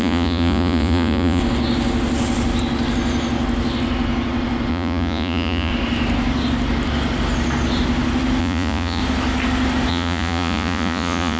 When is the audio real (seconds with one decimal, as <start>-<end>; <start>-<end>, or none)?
1.4-4.7; 5.7-8.4; 9.0-9.9